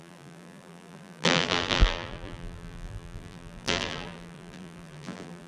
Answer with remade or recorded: remade